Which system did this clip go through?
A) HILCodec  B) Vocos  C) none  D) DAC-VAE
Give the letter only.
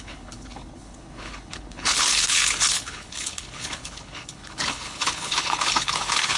A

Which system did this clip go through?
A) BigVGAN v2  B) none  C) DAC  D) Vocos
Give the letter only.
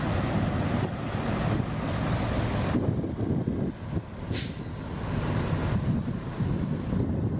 B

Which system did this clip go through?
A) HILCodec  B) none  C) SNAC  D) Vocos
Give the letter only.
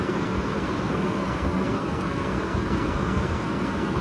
C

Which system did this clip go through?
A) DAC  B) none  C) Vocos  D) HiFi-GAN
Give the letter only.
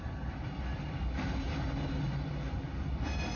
B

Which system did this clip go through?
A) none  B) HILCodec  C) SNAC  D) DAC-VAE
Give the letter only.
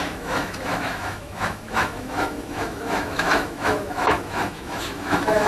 D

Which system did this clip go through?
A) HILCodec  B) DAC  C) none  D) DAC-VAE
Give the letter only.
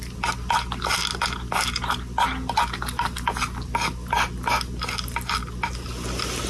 C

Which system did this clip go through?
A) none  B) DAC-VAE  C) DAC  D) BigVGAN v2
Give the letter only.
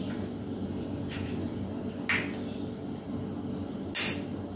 A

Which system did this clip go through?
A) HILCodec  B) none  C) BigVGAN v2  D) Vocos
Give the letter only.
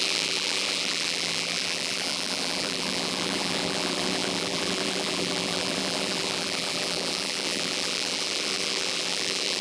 C